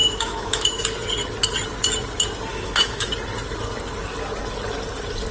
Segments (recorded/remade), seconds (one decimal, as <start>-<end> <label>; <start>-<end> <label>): 0.0-0.8 remade; 0.8-2.5 recorded; 2.5-3.1 remade; 3.1-5.3 recorded